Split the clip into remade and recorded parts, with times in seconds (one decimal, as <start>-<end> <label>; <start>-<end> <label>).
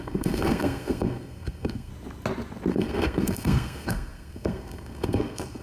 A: 0.0-1.9 remade; 1.9-2.7 recorded; 2.7-5.6 remade